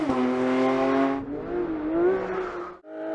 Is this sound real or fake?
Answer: real